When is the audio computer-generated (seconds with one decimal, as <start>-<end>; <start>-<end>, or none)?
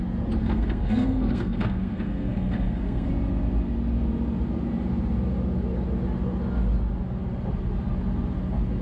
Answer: 0.4-3.1